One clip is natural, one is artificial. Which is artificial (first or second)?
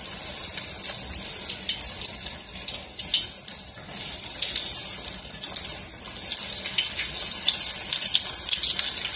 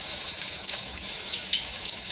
second